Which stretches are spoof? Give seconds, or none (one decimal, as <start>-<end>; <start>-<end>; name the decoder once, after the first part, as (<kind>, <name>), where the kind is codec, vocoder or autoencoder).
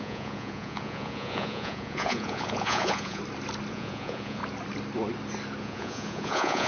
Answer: 0.0-3.2 (vocoder, Vocos); 3.7-4.4; 5.6-6.7